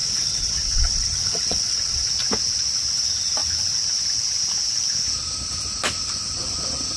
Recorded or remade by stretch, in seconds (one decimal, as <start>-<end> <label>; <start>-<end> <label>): 0.0-2.1 remade; 2.1-7.0 recorded